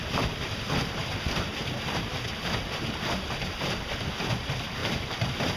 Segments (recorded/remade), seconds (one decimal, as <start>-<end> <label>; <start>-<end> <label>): 0.0-1.0 recorded; 1.0-2.1 remade; 2.1-4.8 recorded; 4.8-5.6 remade